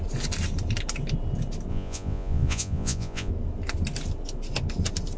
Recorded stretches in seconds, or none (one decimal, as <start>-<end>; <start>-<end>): 0.0-1.7; 3.3-5.2